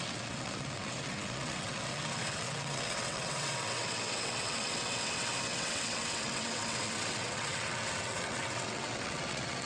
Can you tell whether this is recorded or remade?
remade